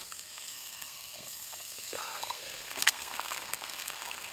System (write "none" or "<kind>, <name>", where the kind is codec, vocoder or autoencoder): codec, SNAC